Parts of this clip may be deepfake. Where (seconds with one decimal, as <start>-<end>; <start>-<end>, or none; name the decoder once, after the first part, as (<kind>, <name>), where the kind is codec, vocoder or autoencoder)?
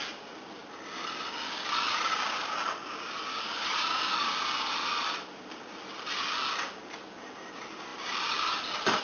none